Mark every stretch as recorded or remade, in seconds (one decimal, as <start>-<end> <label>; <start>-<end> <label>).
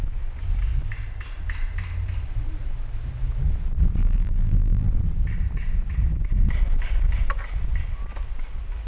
0.0-4.0 recorded; 4.0-4.9 remade; 4.9-8.9 recorded